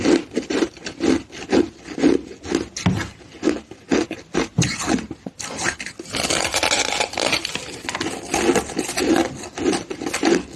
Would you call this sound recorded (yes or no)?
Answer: yes